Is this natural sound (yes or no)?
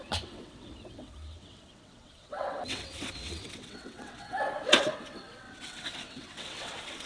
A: no